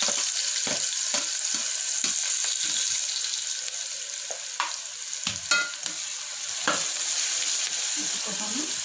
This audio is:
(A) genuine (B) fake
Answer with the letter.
A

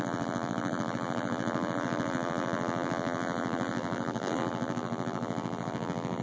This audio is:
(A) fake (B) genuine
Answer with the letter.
A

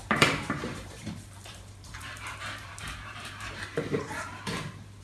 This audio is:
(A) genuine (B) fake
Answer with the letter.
B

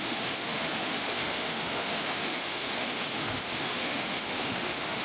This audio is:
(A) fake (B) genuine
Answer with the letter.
A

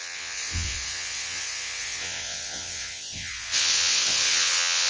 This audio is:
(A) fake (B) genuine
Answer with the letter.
A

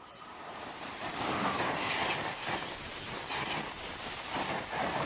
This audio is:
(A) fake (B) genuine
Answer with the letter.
A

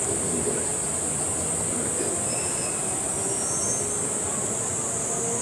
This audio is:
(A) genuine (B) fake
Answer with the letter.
A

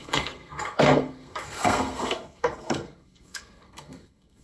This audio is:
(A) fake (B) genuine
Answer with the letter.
A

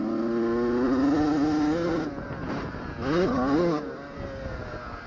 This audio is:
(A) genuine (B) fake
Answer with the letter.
A